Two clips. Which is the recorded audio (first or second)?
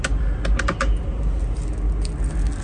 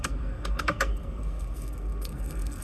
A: first